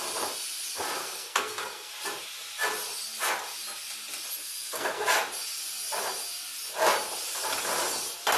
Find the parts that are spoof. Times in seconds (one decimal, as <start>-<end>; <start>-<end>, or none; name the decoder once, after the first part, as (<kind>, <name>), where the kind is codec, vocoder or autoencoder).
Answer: 1.0-1.9 (codec, SNAC); 4.4-5.1